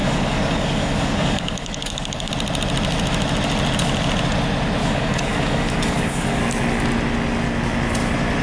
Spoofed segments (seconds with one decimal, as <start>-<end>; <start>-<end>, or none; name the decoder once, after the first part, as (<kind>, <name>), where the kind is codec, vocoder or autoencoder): 0.0-2.3 (codec, DAC); 4.8-6.4